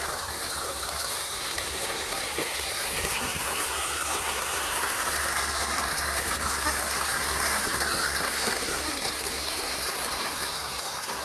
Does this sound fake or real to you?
fake